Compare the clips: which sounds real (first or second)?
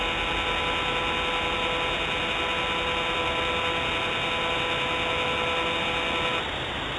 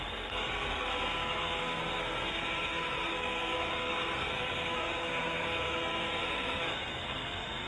first